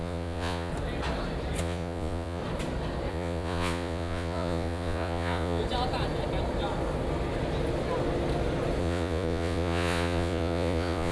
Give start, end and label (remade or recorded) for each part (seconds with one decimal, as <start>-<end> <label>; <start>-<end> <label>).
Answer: 0.0-0.7 remade; 0.7-1.6 recorded; 1.6-2.4 remade; 2.4-3.1 recorded; 3.1-5.6 remade; 5.6-8.8 recorded; 8.8-11.1 remade